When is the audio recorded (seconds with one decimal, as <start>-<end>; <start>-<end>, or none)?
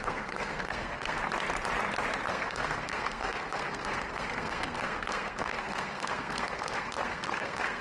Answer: 1.2-2.3